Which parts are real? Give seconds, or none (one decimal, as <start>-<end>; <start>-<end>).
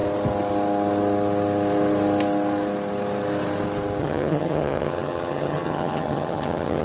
0.0-4.0